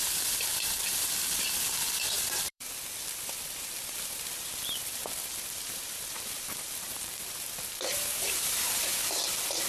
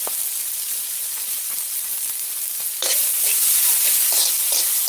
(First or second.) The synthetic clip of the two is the first